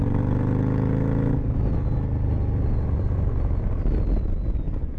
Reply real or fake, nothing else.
real